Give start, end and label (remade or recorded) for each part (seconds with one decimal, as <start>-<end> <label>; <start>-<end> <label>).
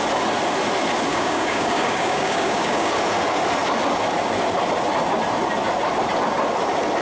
0.0-1.1 recorded; 1.1-2.9 remade; 2.9-7.0 recorded